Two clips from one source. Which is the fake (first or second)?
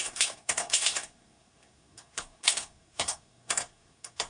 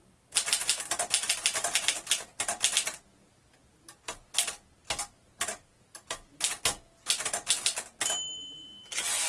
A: first